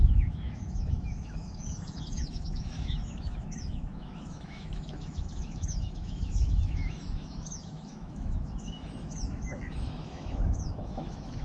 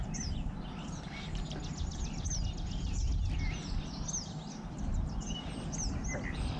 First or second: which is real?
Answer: second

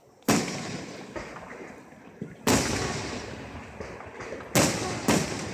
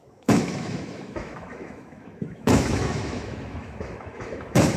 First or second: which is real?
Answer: first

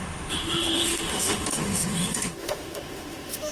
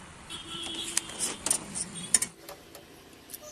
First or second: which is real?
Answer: second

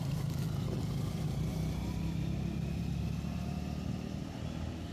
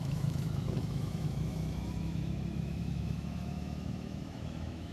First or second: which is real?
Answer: first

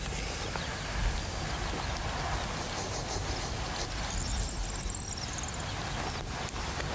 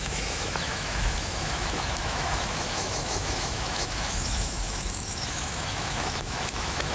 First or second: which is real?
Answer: first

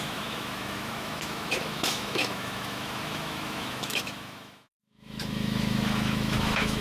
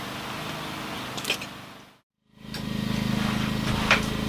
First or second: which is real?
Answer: second